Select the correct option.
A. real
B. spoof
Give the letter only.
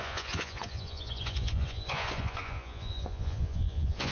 B